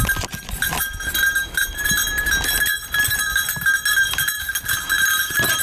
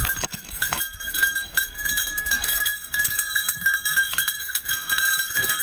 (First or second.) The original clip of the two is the first